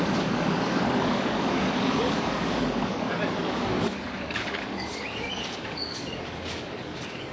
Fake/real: fake